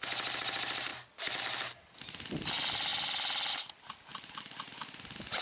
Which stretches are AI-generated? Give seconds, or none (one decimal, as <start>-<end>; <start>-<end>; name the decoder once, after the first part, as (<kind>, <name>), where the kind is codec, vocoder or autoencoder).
4.1-4.7 (vocoder, BigVGAN v2)